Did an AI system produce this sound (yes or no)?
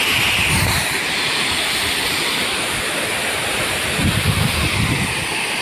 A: yes